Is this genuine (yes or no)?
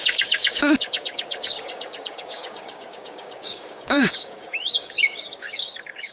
no